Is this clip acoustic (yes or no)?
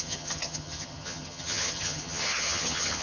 no